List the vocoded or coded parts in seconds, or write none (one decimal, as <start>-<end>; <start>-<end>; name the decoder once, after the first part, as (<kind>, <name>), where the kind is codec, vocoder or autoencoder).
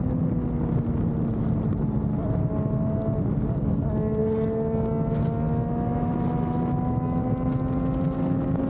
none